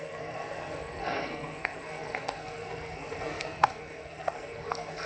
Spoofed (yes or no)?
yes